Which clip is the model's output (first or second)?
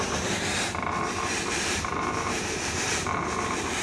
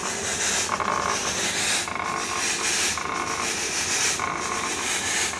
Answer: first